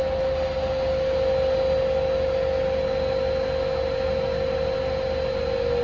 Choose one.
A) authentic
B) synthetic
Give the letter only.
A